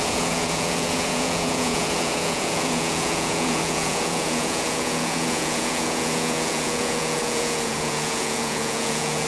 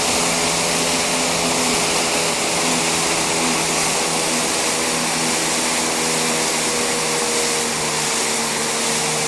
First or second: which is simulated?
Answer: first